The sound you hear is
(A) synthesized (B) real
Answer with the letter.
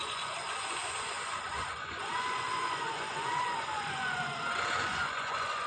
A